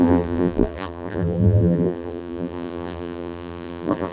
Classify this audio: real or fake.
fake